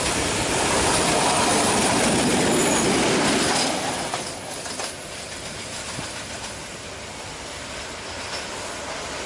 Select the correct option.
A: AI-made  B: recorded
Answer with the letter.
A